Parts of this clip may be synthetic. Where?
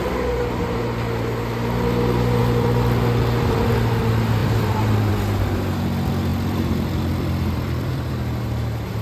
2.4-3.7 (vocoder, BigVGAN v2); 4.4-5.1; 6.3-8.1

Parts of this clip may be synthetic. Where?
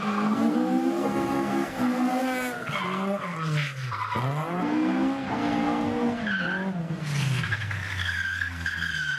0.0-6.2 (codec, SNAC); 6.8-9.2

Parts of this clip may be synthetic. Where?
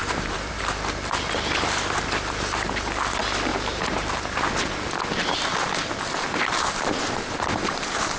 0.0-0.6 (vocoder, BigVGAN v2); 3.5-4.9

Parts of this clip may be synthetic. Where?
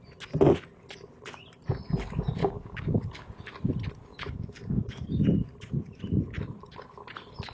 2.4-3.4 (codec, DAC); 4.1-5.1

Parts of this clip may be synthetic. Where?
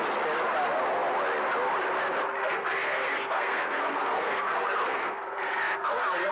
2.4-6.3 (codec, SNAC)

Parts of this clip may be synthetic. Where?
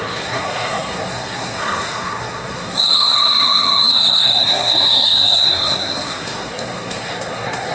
0.0-7.7 (codec, SNAC)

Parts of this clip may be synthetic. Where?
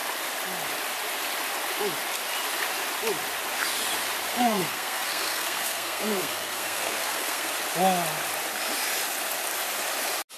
4.3-7.5 (codec, SNAC)